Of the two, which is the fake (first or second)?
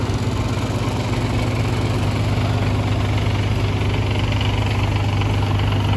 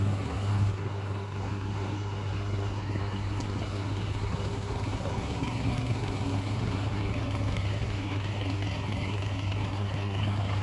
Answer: second